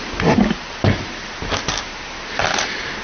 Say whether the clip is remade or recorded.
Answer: recorded